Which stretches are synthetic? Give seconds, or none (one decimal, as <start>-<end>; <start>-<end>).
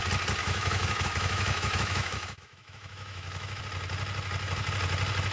0.4-3.6